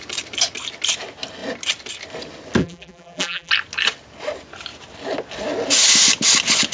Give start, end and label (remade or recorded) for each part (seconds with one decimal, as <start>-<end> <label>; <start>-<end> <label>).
0.0-2.6 recorded; 2.6-3.5 remade; 3.5-6.7 recorded